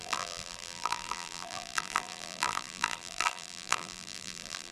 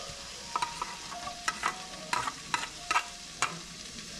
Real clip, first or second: second